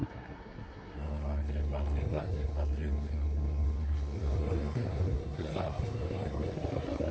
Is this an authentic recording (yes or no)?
no